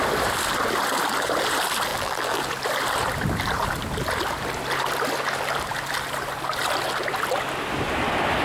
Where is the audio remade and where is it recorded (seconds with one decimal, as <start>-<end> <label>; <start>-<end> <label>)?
0.0-1.9 recorded; 1.9-2.4 remade; 2.4-8.4 recorded